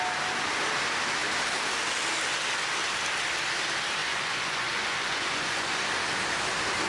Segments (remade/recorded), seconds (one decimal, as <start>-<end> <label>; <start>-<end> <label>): 0.0-4.0 recorded; 4.0-5.8 remade; 5.8-6.9 recorded